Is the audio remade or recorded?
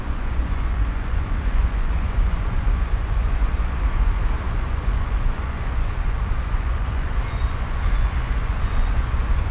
remade